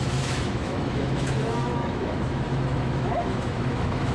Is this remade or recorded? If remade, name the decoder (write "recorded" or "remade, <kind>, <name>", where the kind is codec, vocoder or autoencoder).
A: remade, autoencoder, DAC-VAE